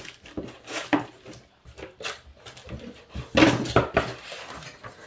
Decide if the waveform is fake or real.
real